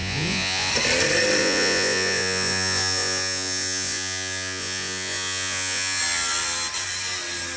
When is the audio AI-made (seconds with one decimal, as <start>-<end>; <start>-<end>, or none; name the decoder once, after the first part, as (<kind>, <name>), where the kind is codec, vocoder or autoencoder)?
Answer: 0.0-0.7 (vocoder, Vocos); 1.4-6.0